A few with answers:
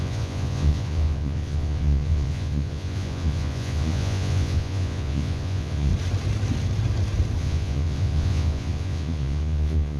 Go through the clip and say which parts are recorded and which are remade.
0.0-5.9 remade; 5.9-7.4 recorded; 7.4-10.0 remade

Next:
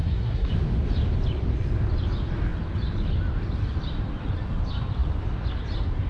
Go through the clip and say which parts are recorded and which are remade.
0.0-0.5 remade; 0.5-6.1 recorded